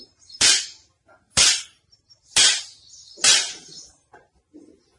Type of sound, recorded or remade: remade